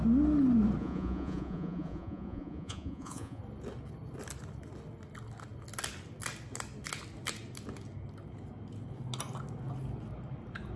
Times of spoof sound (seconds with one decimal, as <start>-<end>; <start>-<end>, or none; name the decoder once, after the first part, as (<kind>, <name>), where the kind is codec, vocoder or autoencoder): 0.8-3.4 (vocoder, Vocos)